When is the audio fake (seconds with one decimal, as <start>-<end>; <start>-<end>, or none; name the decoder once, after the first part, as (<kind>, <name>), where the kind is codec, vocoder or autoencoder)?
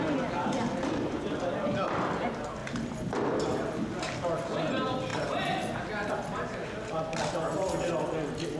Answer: none